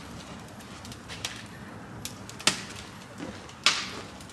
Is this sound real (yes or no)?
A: yes